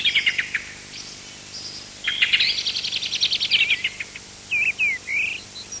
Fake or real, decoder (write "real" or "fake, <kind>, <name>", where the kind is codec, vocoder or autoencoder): real